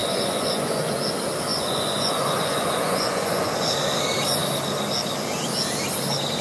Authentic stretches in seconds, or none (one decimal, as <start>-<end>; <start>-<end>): 1.0-1.5; 3.5-6.4